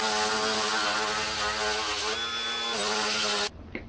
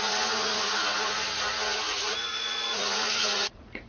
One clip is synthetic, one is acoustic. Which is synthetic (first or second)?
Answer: second